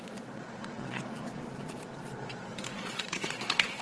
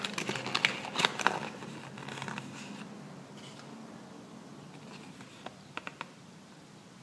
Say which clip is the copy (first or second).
first